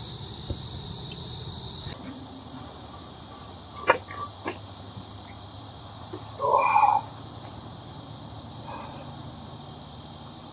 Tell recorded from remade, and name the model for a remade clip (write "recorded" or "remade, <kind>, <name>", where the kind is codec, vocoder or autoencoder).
remade, vocoder, BigVGAN v2